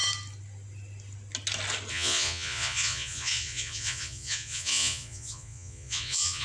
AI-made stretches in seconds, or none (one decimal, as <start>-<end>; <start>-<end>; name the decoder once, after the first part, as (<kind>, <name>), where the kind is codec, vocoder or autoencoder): 1.9-6.4 (vocoder, Vocos)